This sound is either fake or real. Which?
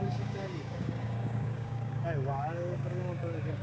fake